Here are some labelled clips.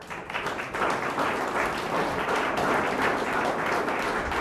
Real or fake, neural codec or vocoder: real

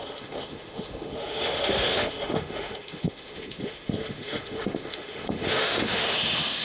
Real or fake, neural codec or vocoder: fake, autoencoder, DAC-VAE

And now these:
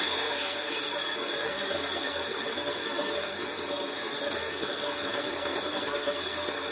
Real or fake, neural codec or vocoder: fake, codec, SNAC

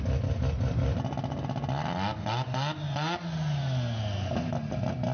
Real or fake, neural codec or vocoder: real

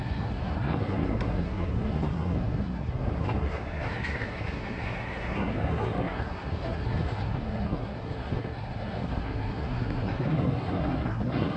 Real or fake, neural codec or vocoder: fake, codec, SNAC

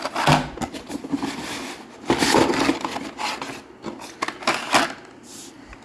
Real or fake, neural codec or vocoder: real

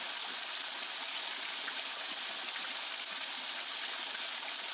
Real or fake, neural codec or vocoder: real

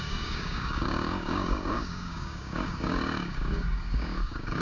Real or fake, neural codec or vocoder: fake, codec, DAC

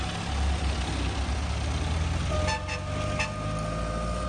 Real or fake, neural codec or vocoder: real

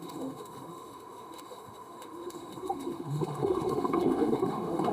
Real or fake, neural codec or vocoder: fake, autoencoder, DAC-VAE